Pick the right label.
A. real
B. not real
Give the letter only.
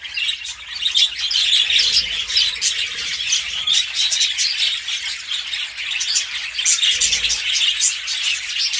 A